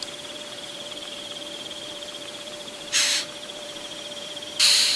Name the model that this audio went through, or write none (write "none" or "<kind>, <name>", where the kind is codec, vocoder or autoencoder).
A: vocoder, BigVGAN v2